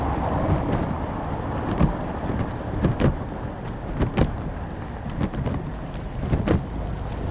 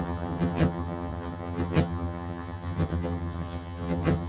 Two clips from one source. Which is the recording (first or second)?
first